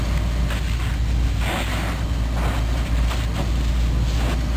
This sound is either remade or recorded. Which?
recorded